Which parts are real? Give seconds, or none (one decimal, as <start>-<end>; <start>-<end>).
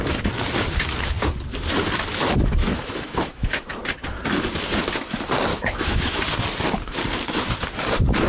0.0-2.1; 3.8-5.5; 6.2-8.3